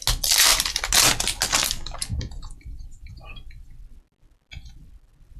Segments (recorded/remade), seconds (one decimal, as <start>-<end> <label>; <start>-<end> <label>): 0.0-1.6 recorded; 1.6-3.1 remade; 3.1-5.4 recorded

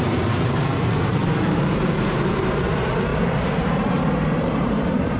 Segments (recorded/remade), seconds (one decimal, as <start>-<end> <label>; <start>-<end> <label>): 0.0-5.2 remade

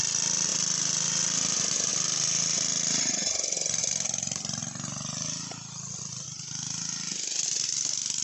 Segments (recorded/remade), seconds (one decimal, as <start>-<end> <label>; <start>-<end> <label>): 0.0-0.5 remade; 0.5-1.9 recorded; 1.9-3.2 remade; 3.2-3.9 recorded; 3.9-4.6 remade; 4.6-5.9 recorded; 5.9-8.2 remade

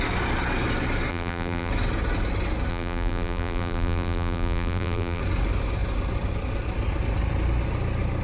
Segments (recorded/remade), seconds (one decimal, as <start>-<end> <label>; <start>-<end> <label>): 0.0-1.1 recorded; 1.1-1.7 remade; 1.7-2.7 recorded; 2.7-5.2 remade; 5.2-8.2 recorded

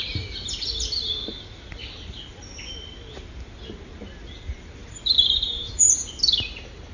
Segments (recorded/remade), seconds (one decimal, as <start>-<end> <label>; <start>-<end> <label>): 0.0-4.8 recorded; 4.8-6.0 remade; 6.0-6.9 recorded

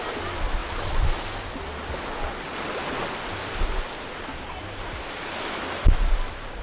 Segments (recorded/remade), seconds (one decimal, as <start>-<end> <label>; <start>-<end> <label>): 0.0-6.6 recorded